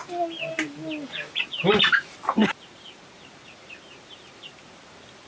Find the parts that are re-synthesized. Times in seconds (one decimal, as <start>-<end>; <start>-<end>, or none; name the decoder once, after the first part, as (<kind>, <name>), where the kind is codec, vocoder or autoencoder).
1.4-5.3 (vocoder, BigVGAN v2)